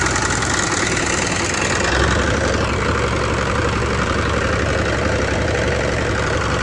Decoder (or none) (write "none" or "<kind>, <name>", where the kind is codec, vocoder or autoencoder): none